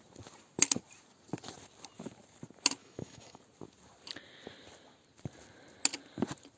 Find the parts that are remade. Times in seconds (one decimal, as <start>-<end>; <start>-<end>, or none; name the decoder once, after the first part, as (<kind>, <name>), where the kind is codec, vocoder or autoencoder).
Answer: 2.8-3.4 (autoencoder, DAC-VAE)